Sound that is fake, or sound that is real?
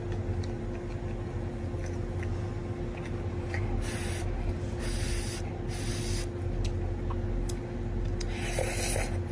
real